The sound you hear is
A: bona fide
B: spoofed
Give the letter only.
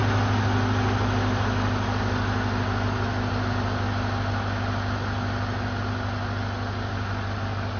A